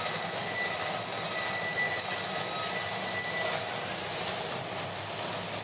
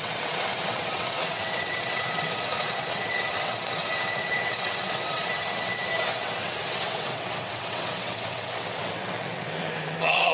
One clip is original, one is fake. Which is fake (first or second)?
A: second